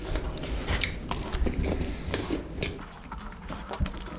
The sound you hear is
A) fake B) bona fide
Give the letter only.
A